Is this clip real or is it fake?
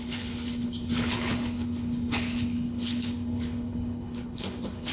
fake